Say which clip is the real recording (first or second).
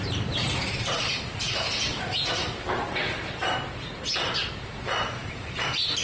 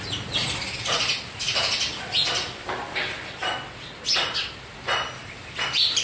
second